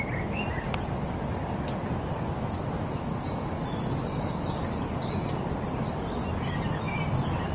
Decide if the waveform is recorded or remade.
recorded